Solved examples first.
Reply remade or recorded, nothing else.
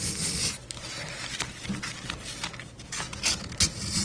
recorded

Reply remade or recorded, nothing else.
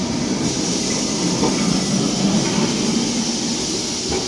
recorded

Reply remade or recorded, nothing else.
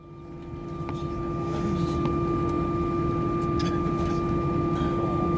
recorded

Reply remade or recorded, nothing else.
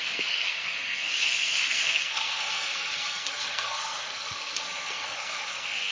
remade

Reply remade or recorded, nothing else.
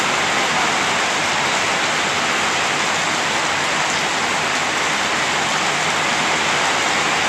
recorded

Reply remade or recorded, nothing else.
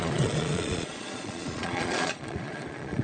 remade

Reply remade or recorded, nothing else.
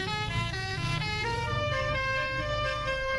remade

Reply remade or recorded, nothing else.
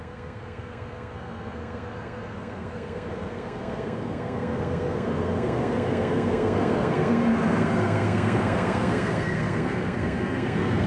remade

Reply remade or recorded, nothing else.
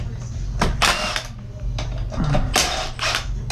recorded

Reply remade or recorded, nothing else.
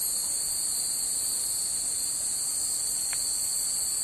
recorded